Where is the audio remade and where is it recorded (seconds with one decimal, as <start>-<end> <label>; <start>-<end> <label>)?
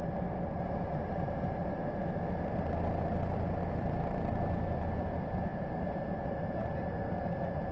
0.0-2.0 remade; 2.0-3.3 recorded; 3.3-7.7 remade